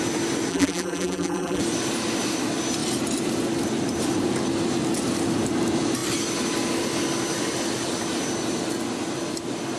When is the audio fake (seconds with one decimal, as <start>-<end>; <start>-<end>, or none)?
0.5-1.6